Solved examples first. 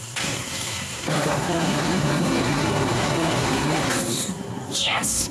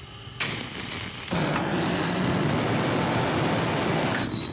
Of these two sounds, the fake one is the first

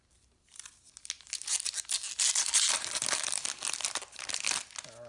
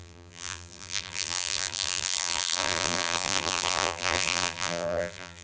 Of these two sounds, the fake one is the second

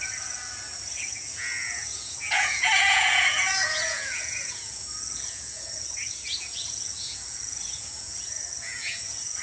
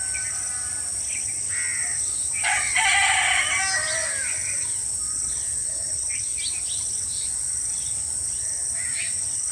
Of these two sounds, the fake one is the first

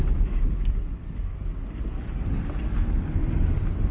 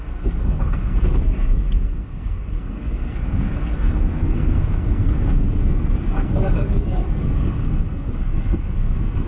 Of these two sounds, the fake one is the second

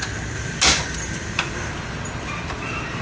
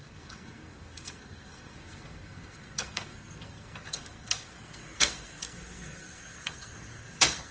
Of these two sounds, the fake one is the second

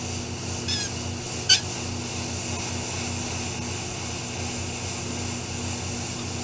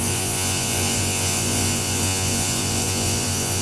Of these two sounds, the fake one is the second